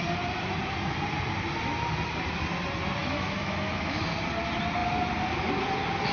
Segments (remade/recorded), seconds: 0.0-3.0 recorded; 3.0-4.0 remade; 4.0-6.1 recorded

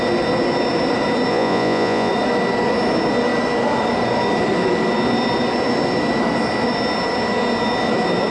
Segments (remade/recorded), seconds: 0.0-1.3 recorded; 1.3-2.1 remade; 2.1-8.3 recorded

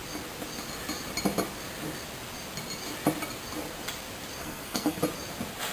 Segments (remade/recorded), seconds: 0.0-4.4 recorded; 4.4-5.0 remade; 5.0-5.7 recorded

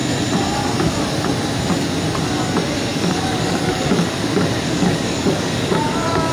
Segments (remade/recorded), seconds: 0.0-2.9 recorded; 2.9-6.3 remade